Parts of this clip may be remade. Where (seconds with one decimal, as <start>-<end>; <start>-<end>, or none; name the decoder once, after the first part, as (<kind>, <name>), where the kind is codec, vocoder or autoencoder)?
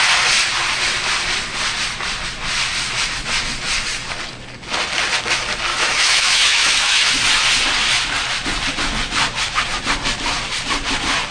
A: 5.7-7.1 (autoencoder, DAC-VAE)